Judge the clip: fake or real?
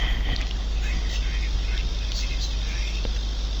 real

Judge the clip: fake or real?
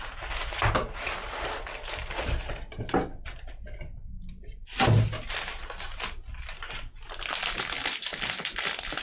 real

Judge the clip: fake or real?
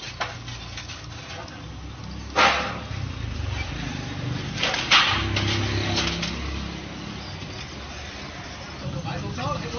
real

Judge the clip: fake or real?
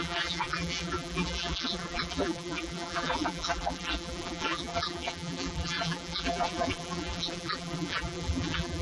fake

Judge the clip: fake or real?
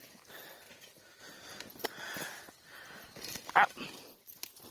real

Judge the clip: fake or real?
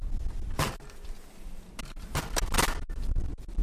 real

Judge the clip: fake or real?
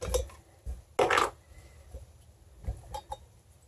real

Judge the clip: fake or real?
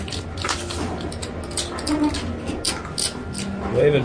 real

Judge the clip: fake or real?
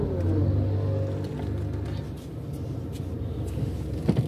real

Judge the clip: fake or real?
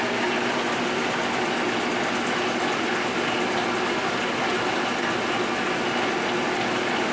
real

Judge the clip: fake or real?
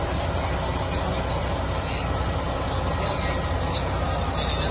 real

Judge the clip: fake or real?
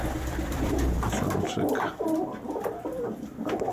real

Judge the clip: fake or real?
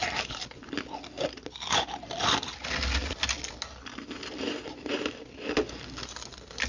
real